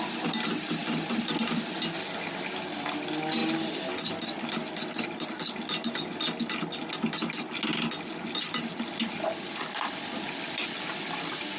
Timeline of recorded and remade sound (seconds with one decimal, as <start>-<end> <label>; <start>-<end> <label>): 0.0-11.6 recorded